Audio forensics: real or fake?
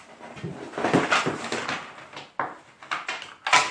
real